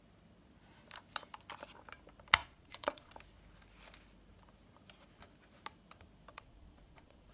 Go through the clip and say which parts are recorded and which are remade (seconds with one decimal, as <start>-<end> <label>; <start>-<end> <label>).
0.0-2.4 recorded; 2.4-3.1 remade; 3.1-6.3 recorded; 6.3-7.3 remade